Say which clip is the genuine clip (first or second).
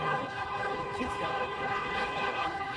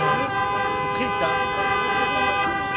second